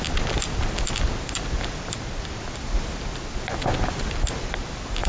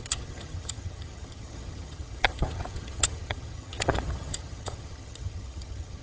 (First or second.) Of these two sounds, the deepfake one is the second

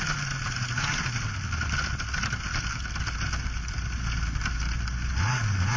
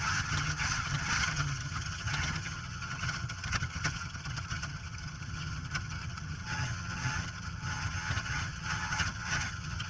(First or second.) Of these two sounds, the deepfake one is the second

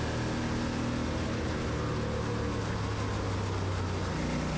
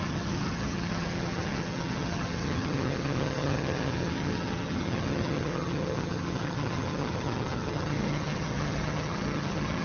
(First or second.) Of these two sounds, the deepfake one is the second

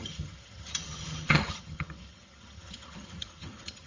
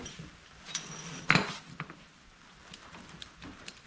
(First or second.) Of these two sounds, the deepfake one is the first